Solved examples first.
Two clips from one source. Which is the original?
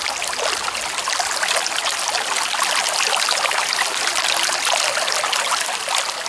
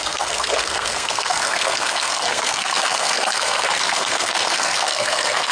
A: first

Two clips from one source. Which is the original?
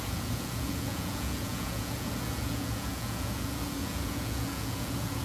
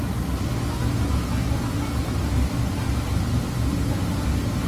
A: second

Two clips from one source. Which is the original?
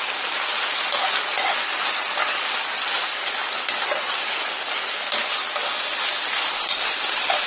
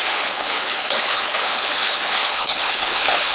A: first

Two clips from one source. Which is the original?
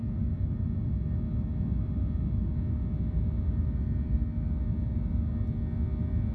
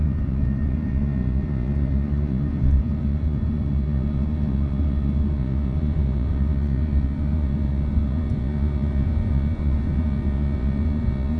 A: first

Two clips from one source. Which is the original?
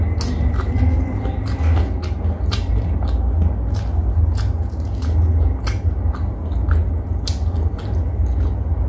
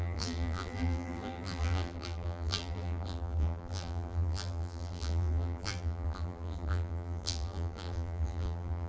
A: first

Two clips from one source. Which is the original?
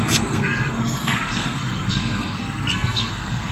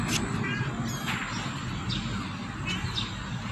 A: second